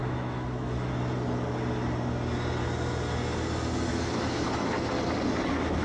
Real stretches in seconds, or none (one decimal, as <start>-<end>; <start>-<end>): 0.9-3.9; 4.7-5.8